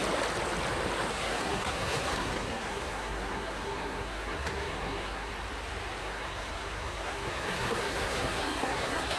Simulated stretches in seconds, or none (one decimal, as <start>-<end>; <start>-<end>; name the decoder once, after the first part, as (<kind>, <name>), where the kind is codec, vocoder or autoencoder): 1.1-5.3 (codec, SNAC); 6.0-9.2